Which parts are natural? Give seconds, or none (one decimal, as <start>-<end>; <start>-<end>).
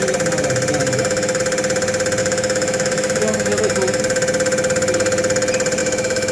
0.0-0.8; 1.4-2.2; 4.0-5.8